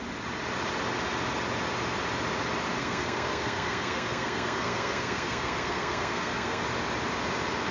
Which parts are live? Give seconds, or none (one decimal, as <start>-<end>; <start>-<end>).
0.0-2.8; 6.6-7.7